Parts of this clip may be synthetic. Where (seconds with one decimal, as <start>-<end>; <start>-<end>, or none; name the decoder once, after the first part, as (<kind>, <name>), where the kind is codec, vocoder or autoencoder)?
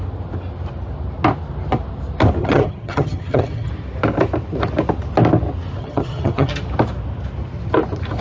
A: 2.4-3.7 (vocoder, HiFi-GAN); 5.8-6.5